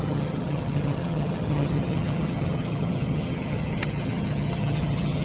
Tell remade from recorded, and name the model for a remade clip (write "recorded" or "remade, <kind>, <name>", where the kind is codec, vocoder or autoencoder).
remade, vocoder, HiFi-GAN